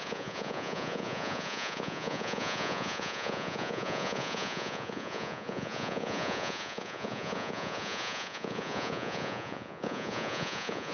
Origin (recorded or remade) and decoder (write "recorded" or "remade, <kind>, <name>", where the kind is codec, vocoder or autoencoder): remade, vocoder, Vocos